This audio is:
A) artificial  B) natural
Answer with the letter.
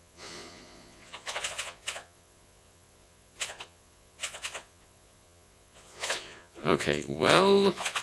A